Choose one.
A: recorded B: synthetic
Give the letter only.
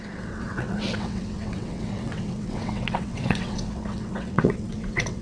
B